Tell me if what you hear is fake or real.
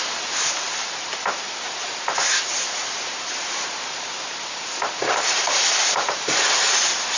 fake